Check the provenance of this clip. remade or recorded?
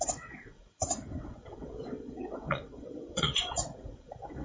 remade